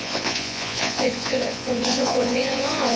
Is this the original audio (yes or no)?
no